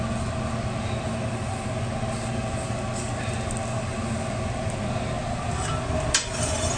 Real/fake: real